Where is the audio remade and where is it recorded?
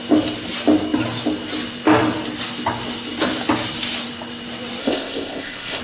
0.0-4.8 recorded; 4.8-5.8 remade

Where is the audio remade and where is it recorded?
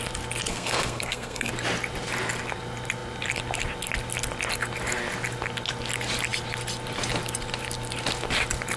0.0-0.5 recorded; 0.5-1.5 remade; 1.5-8.8 recorded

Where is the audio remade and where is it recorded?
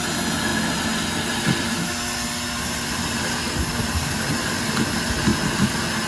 0.0-6.1 recorded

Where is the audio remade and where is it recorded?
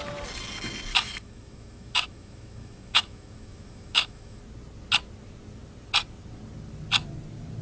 0.0-0.9 recorded; 0.9-4.4 remade; 4.4-7.6 recorded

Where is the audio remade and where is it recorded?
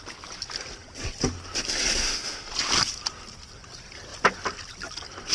0.0-2.0 recorded; 2.0-2.5 remade; 2.5-5.3 recorded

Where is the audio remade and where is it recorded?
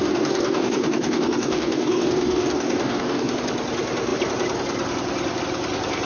0.0-3.3 remade; 3.3-6.1 recorded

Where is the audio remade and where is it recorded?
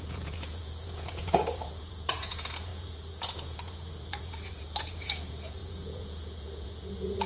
0.0-7.3 remade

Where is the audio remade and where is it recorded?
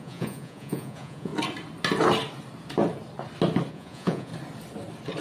0.0-1.3 remade; 1.3-3.7 recorded; 3.7-4.3 remade; 4.3-5.2 recorded